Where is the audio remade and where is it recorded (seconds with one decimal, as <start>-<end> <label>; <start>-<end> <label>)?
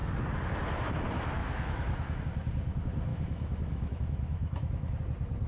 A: 0.0-1.4 recorded; 1.4-2.2 remade; 2.2-3.1 recorded; 3.1-5.0 remade; 5.0-5.5 recorded